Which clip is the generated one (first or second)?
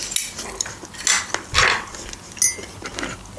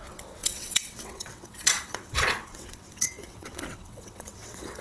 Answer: second